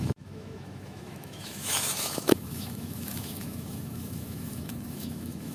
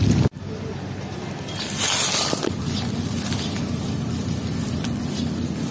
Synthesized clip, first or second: first